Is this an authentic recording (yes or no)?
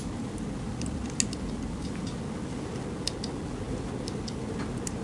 yes